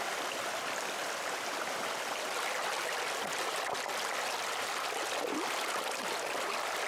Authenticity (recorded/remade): recorded